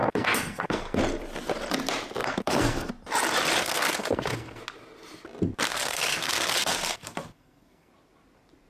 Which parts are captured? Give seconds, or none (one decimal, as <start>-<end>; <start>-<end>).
1.0-2.2; 2.9-3.6; 4.6-5.7; 7.9-8.7